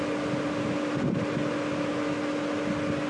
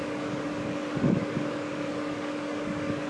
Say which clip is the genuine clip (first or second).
first